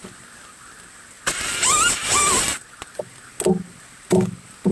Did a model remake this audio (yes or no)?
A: no